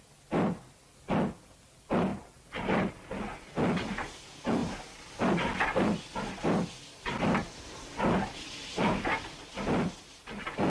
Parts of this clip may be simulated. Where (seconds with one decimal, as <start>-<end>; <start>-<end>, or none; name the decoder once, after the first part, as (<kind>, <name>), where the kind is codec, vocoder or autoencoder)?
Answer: none